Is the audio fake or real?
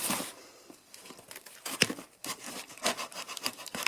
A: fake